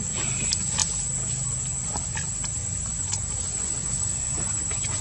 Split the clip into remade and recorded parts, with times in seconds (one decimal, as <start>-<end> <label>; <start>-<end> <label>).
0.0-2.6 recorded; 2.6-4.3 remade; 4.3-5.0 recorded